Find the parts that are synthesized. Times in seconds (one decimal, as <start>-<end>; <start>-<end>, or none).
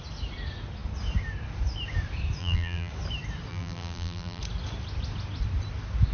2.4-2.9; 3.5-4.4